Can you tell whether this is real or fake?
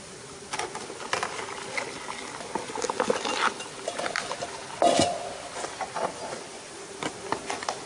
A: real